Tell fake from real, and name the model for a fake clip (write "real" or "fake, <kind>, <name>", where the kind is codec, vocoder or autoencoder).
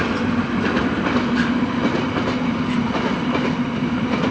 real